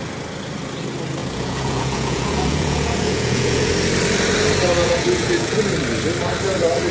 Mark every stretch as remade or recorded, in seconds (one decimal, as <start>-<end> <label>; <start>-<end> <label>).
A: 0.0-1.2 recorded; 1.2-3.7 remade; 3.7-4.8 recorded; 4.8-5.6 remade; 5.6-6.9 recorded